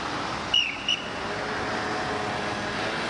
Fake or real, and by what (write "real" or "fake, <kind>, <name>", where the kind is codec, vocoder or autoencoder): real